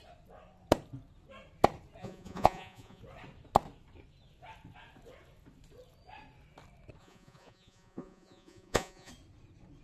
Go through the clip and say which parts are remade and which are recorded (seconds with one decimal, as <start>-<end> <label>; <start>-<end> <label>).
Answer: 0.0-2.0 recorded; 2.0-3.0 remade; 3.0-7.0 recorded; 7.0-9.1 remade; 9.1-9.8 recorded

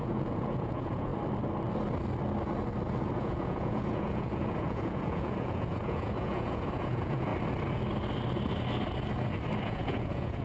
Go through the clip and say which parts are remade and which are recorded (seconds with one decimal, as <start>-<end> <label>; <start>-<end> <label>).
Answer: 0.0-1.1 remade; 1.1-3.2 recorded; 3.2-7.3 remade; 7.3-9.6 recorded; 9.6-10.4 remade

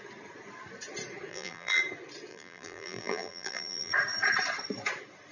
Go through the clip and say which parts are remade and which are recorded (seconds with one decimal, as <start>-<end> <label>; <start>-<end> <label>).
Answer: 0.0-1.3 recorded; 1.3-1.8 remade; 1.8-2.3 recorded; 2.3-3.9 remade; 3.9-5.3 recorded